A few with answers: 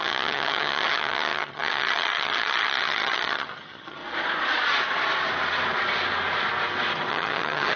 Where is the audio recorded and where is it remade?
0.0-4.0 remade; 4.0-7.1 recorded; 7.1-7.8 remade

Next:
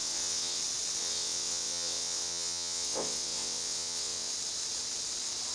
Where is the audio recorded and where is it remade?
0.0-0.6 remade; 0.6-1.0 recorded; 1.0-4.3 remade; 4.3-5.5 recorded

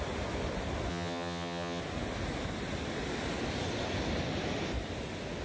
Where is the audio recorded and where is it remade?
0.0-0.9 recorded; 0.9-1.8 remade; 1.8-5.4 recorded

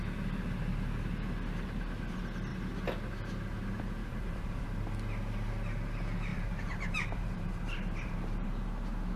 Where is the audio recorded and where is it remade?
0.0-4.0 recorded; 4.0-4.6 remade; 4.6-6.3 recorded; 6.3-8.6 remade; 8.6-9.2 recorded

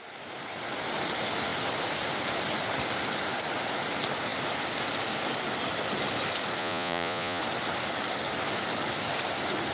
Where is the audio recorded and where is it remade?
0.0-6.6 recorded; 6.6-7.4 remade; 7.4-9.7 recorded